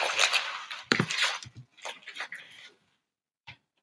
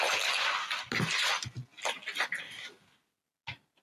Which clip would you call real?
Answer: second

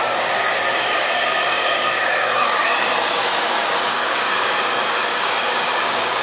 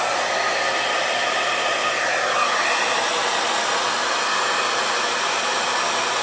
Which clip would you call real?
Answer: second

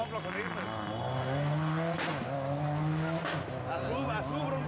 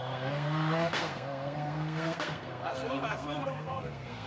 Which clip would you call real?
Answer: first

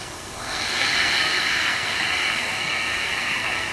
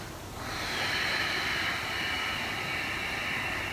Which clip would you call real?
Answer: second